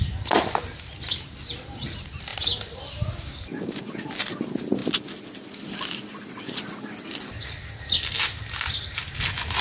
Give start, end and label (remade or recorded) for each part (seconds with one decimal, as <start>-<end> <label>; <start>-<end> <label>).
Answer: 0.0-9.6 recorded